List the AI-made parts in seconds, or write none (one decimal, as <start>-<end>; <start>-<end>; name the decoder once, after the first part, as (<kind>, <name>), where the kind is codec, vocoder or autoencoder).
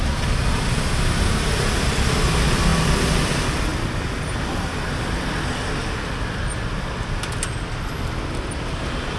3.7-5.0 (vocoder, BigVGAN v2)